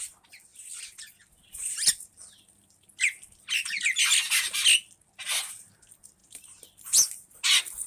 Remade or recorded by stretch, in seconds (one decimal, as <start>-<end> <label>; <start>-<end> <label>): 0.0-7.9 recorded